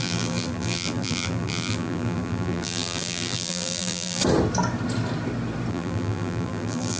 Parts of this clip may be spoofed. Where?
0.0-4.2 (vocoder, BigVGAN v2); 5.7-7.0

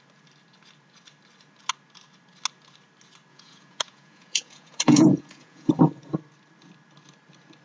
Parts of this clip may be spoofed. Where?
3.3-5.9 (vocoder, Vocos)